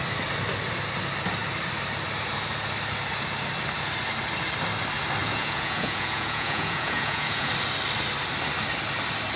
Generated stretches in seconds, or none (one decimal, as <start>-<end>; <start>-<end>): 5.2-7.5